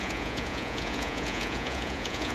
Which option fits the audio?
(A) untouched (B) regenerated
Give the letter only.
B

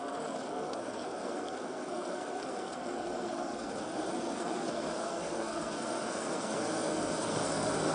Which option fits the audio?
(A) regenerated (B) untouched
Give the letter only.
A